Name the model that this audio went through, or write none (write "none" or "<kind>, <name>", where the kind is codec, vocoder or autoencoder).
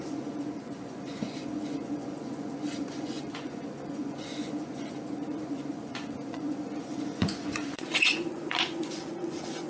vocoder, Vocos